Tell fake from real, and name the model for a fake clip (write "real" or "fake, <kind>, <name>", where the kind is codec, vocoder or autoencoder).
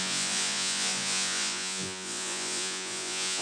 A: fake, vocoder, Vocos